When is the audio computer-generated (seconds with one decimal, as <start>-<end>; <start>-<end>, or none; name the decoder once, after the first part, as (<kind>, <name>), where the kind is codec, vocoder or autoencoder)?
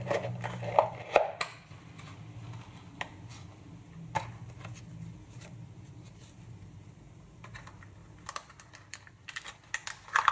none